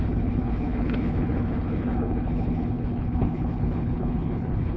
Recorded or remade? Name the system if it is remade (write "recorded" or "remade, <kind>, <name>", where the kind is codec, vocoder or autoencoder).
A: remade, codec, HILCodec